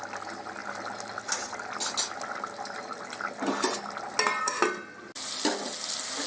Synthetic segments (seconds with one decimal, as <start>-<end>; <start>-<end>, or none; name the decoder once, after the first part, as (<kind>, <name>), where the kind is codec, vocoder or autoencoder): none